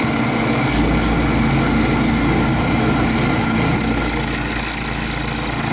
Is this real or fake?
real